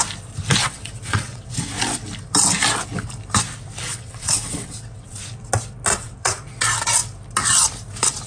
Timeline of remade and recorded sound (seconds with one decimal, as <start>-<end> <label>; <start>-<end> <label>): 0.0-0.6 recorded; 0.6-1.5 remade; 1.5-3.9 recorded; 3.9-5.2 remade; 5.2-5.9 recorded; 5.9-6.4 remade; 6.4-8.3 recorded